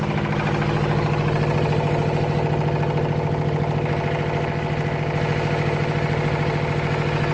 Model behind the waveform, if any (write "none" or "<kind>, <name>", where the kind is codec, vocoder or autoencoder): none